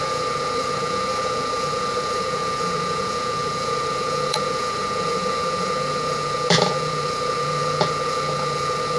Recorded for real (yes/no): no